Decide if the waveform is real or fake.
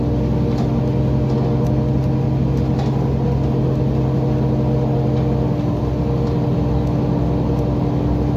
real